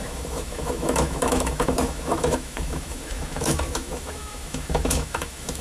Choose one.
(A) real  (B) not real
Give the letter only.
B